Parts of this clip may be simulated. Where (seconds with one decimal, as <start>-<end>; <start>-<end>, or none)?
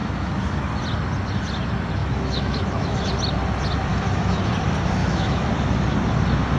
0.0-0.6; 2.0-3.1; 3.9-4.5; 5.0-5.5